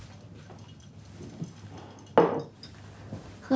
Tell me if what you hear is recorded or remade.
recorded